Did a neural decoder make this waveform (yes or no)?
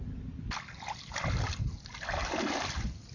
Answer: no